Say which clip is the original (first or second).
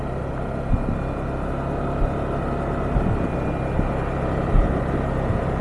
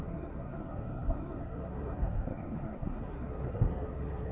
first